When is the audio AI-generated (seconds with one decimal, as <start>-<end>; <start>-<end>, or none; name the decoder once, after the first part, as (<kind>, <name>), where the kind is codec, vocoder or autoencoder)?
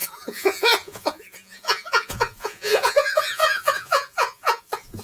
0.0-5.0 (vocoder, Vocos)